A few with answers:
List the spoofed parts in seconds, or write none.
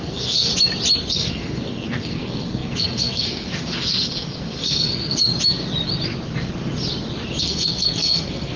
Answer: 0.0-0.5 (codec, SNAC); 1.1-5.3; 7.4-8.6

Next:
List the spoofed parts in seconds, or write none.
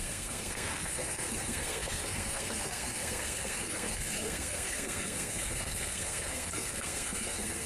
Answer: 0.0-7.7 (codec, SNAC)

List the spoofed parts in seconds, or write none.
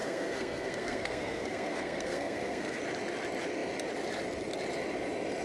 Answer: 0.0-2.8 (codec, SNAC)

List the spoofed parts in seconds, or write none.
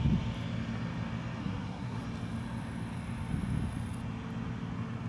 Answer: 1.4-2.0 (codec, SNAC)